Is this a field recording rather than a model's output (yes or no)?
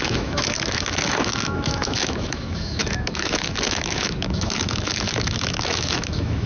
no